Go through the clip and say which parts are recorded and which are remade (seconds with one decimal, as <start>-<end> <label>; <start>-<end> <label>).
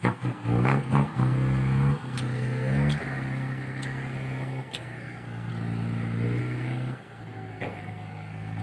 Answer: 0.0-5.5 remade; 5.5-6.4 recorded; 6.4-8.6 remade